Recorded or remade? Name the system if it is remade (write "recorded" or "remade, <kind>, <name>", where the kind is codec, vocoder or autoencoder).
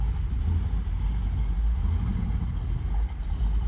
recorded